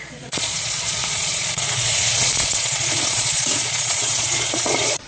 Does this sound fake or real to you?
fake